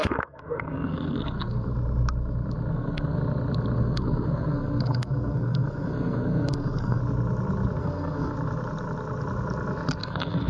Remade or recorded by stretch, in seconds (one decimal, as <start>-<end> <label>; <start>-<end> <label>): 0.0-1.7 remade; 1.7-2.7 recorded; 2.7-3.2 remade; 3.2-3.8 recorded; 3.8-7.0 remade; 7.0-7.8 recorded; 7.8-8.3 remade; 8.3-10.0 recorded; 10.0-10.5 remade